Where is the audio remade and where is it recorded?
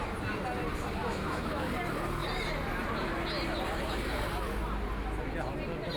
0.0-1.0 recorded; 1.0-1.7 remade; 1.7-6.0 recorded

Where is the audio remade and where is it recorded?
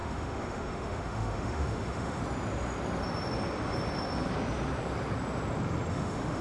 0.0-2.2 remade; 2.2-5.9 recorded; 5.9-6.4 remade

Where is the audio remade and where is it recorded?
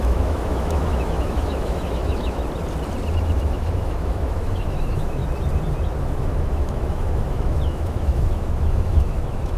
0.0-2.4 remade; 2.4-3.1 recorded; 3.1-5.2 remade; 5.2-6.0 recorded; 6.0-9.6 remade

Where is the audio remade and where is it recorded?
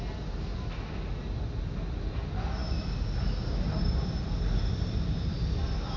0.0-6.0 recorded